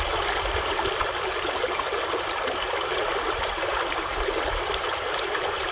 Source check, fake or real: fake